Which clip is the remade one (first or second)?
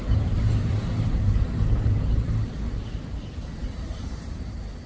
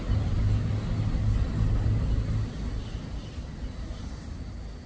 first